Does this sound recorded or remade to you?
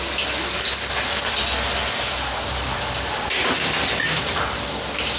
recorded